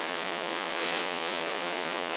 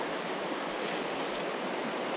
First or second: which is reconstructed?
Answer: first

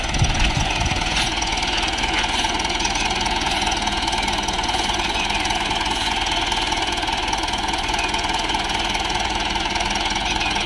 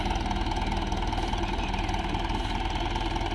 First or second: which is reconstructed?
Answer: first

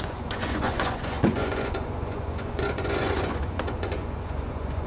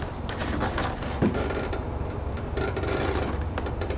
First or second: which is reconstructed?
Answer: first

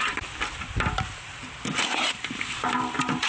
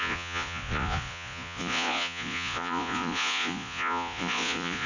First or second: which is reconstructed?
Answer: second